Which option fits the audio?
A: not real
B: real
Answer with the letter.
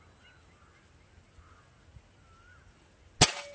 B